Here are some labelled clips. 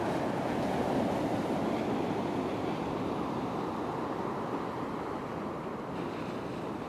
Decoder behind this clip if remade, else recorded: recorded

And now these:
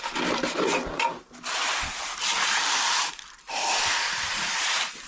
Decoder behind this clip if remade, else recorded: recorded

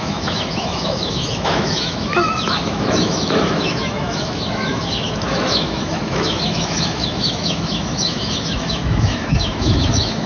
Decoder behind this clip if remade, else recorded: remade, autoencoder, DAC-VAE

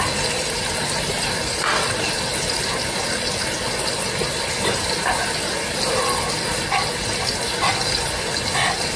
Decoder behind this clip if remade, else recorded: recorded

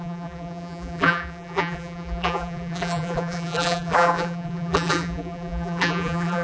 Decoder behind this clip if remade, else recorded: remade, vocoder, BigVGAN v2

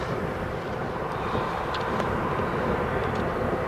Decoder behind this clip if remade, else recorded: recorded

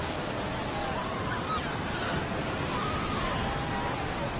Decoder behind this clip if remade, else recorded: recorded